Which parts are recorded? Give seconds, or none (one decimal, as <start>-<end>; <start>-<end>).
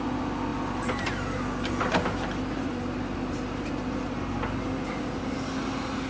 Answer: 0.0-6.1